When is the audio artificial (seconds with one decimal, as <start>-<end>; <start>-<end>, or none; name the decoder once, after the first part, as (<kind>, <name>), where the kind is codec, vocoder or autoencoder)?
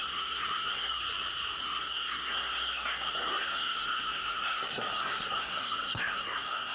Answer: 0.0-1.0 (codec, SNAC); 1.6-6.7